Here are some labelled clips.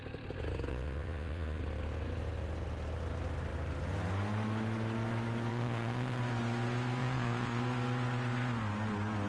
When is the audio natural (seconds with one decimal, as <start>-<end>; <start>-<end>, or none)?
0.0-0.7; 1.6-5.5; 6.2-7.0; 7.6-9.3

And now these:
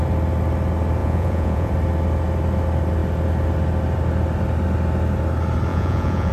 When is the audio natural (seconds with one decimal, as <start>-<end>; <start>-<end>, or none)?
0.0-1.0; 1.7-5.7

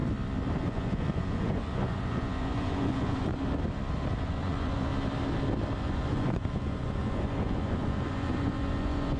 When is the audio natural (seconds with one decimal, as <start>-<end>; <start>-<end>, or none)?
0.0-0.6; 3.3-4.2; 4.9-5.8

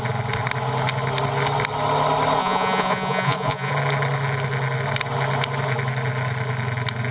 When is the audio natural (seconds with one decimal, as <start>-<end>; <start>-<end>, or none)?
0.0-2.4; 3.7-7.1

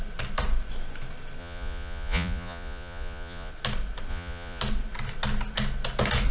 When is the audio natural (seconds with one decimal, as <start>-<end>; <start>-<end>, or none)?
0.0-1.4; 3.5-4.1; 4.6-6.3